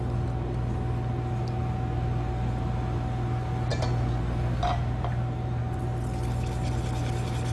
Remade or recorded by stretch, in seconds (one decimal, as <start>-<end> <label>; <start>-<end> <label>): 0.0-7.5 recorded